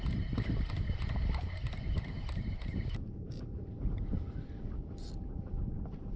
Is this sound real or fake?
fake